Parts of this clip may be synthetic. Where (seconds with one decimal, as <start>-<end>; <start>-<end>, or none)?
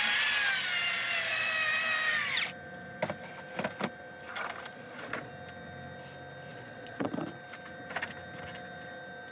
4.7-5.3; 6.5-7.1